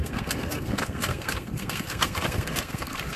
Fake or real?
fake